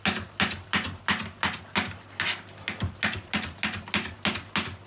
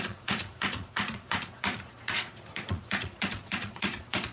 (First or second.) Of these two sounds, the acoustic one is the first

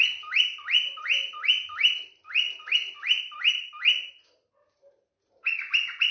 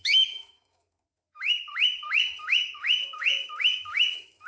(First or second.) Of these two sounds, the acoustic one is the first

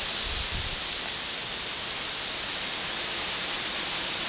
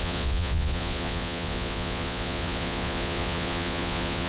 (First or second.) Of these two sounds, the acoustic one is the first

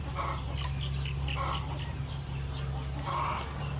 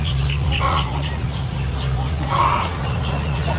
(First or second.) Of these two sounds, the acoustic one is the first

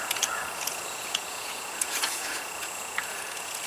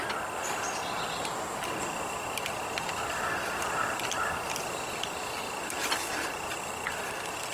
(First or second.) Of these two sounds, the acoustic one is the second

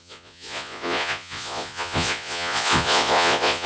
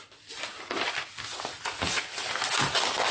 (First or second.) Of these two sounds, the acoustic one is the second